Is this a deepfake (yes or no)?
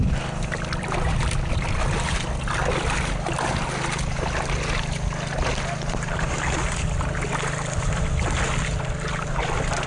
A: no